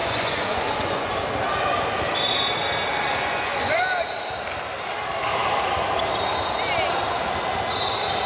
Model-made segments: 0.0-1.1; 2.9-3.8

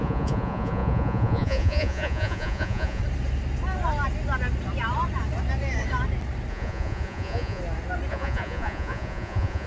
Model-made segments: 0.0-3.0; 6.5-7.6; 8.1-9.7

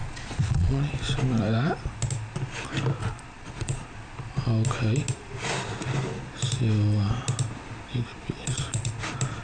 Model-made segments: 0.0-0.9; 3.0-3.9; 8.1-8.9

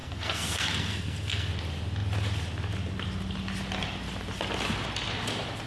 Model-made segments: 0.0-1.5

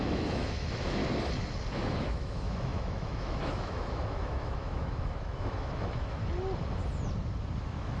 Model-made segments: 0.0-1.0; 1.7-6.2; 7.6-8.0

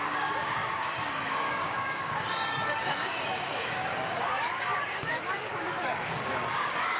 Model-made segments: 0.0-7.0